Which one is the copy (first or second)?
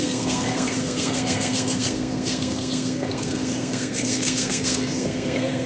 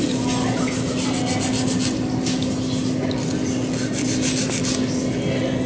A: first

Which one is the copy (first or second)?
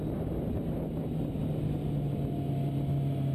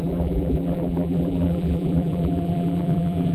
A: second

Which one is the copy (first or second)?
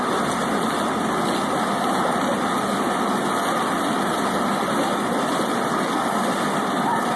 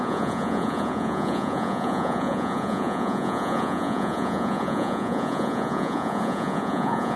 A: second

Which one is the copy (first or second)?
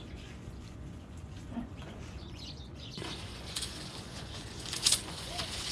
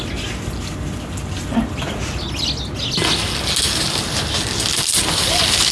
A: first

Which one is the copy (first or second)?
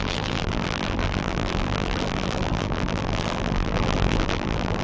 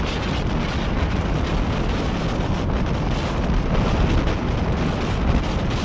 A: first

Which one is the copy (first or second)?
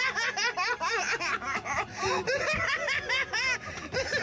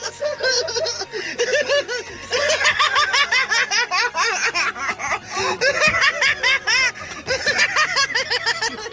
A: first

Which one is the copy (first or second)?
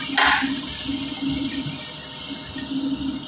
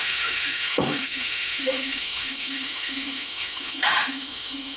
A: second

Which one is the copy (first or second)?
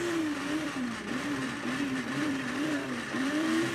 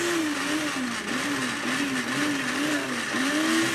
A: first